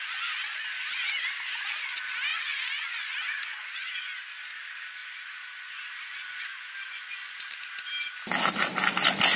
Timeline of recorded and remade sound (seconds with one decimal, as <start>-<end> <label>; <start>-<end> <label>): 0.0-2.3 recorded; 2.3-3.9 remade; 3.9-9.4 recorded